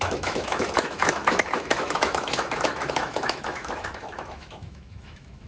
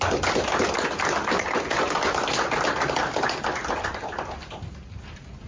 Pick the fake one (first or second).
first